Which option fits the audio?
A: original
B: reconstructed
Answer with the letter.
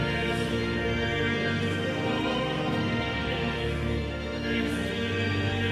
B